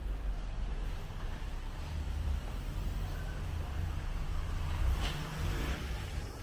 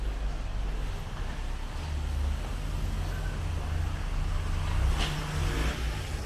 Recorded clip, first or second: second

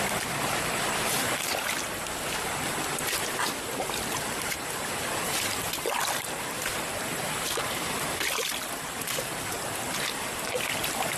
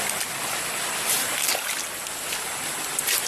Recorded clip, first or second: second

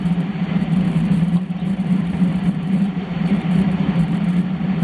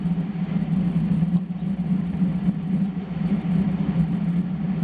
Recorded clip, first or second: second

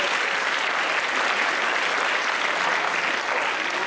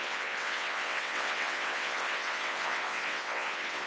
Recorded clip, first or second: first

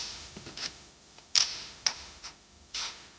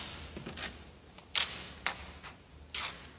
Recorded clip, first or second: second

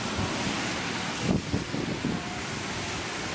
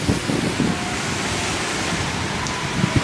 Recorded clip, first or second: second